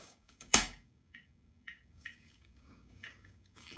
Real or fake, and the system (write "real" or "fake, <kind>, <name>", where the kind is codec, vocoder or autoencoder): fake, codec, DAC